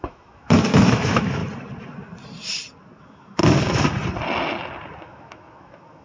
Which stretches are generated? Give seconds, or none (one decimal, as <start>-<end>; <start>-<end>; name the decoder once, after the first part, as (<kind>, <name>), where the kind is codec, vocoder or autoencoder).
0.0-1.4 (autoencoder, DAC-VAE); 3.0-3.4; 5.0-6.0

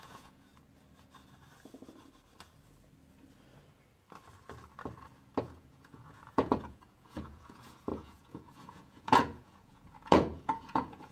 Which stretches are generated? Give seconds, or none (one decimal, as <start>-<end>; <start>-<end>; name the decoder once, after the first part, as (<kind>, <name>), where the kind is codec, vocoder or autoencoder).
0.0-0.5 (vocoder, Vocos); 5.4-11.1

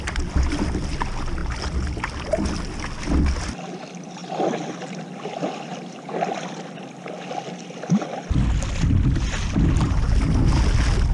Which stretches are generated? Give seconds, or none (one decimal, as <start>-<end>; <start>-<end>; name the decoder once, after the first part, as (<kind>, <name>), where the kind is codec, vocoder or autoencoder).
none

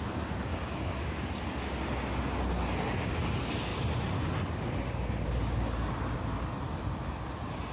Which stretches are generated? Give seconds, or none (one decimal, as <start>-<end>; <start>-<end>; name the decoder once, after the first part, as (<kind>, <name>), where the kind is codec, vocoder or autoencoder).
0.5-1.3 (codec, DAC)

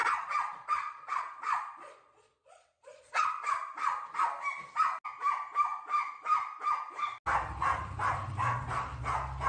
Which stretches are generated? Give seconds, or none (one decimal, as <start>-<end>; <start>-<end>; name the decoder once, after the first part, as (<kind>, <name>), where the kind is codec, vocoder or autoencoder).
0.0-3.1 (vocoder, Vocos)